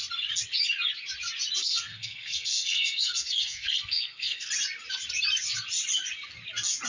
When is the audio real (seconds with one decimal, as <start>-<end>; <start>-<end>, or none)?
0.0-1.6; 4.5-6.9